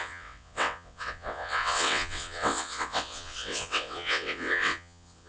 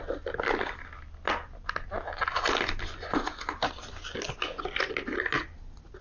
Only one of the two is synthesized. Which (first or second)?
first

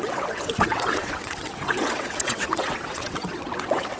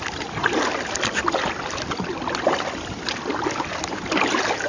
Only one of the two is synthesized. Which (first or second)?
first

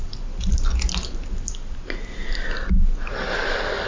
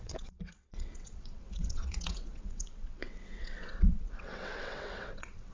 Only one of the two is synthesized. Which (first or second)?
second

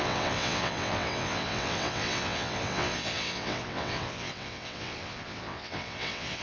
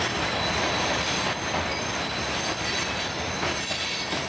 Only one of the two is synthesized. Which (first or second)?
first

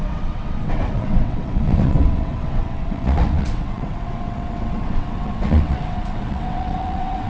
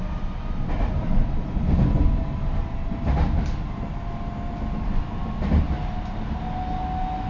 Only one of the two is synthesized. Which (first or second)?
first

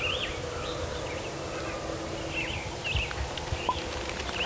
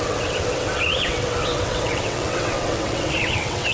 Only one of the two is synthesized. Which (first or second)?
second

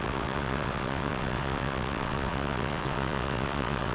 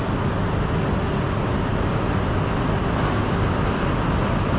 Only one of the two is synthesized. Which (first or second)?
first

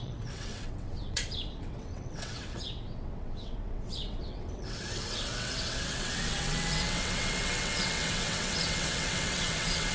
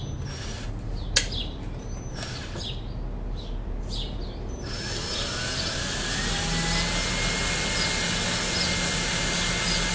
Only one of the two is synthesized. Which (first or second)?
first